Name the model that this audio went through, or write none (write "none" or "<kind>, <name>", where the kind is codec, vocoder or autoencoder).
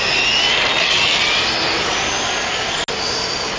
none